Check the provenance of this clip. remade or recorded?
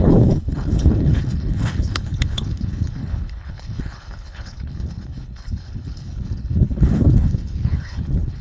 remade